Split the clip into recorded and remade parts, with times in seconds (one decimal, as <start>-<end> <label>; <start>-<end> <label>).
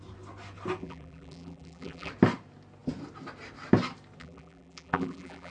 0.0-0.8 recorded; 0.8-2.1 remade; 2.1-4.2 recorded; 4.2-5.5 remade